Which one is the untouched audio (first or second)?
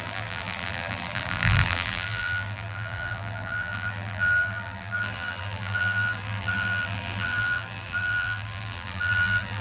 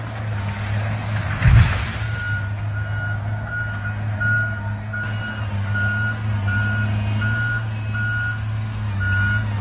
second